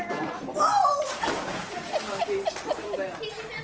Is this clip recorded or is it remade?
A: recorded